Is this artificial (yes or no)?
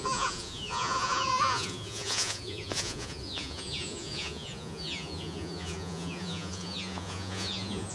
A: yes